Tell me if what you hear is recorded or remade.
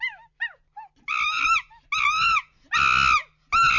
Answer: recorded